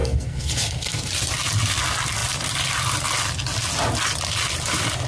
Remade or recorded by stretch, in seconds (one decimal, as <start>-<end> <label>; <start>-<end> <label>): 0.0-1.1 remade; 1.1-5.1 recorded